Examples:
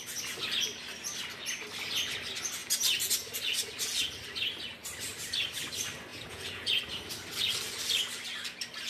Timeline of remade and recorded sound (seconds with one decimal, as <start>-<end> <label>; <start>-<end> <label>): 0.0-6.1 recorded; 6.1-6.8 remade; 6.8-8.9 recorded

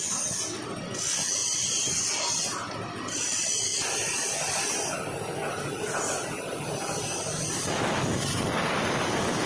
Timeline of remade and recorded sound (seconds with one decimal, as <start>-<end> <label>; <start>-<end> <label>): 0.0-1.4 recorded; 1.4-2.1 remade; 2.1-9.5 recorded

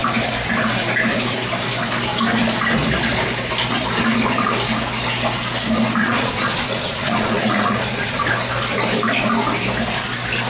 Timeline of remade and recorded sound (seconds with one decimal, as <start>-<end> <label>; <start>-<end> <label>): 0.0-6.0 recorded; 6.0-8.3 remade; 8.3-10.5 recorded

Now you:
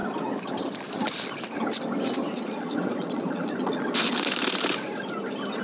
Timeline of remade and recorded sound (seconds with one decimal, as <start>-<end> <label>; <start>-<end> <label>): 0.0-2.2 recorded; 2.2-3.8 remade; 3.8-5.6 recorded

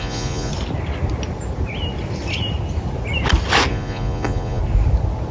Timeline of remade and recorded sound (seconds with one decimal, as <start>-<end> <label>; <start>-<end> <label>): 0.0-0.5 remade; 0.5-3.7 recorded; 3.7-4.6 remade; 4.6-5.3 recorded